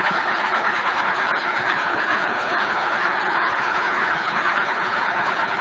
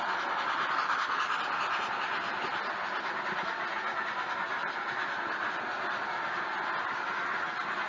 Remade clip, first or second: first